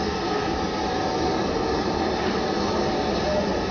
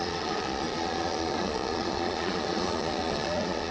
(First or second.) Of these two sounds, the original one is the first